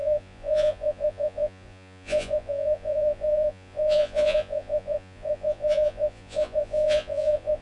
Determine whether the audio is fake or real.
fake